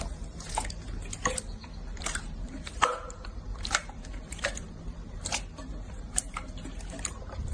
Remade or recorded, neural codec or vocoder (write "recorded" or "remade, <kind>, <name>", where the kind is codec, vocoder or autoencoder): remade, vocoder, BigVGAN v2